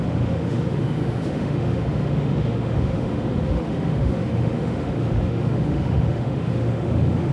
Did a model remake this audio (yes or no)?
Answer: yes